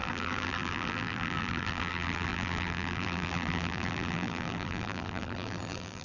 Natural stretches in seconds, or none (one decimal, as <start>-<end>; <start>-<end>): none